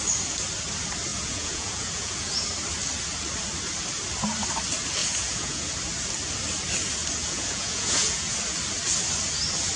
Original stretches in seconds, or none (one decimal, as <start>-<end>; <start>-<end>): 0.0-1.1; 2.4-5.0; 5.7-7.2; 8.4-9.8